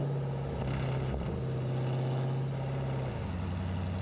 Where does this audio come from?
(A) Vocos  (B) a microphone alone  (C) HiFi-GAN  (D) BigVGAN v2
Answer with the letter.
B